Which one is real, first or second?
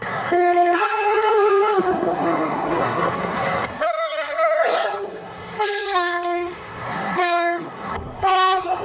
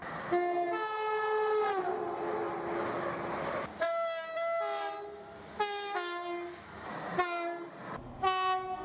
second